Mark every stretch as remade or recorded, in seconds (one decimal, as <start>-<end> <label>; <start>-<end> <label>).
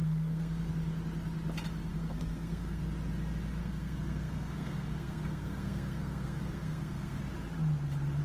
0.0-0.7 remade; 0.7-1.9 recorded; 1.9-2.8 remade; 2.8-3.6 recorded; 3.6-7.2 remade; 7.2-8.2 recorded